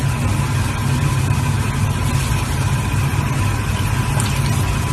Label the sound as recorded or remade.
recorded